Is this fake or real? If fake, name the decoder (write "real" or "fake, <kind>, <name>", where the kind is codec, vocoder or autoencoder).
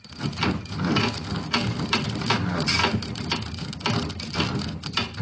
real